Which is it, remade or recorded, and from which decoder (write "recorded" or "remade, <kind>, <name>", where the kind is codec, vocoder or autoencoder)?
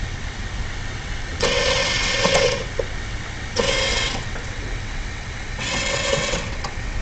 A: remade, vocoder, WaveNeXt